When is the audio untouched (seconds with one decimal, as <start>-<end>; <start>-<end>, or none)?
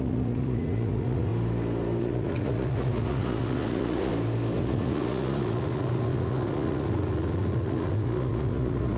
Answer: 1.3-2.0; 4.1-4.6